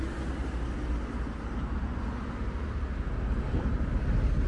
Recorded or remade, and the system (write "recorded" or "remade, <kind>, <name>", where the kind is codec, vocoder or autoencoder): recorded